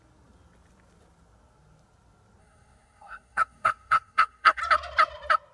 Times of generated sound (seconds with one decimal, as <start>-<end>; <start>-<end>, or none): 2.4-4.6